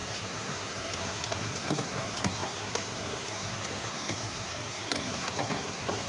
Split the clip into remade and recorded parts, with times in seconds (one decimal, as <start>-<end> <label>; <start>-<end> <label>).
0.0-6.1 remade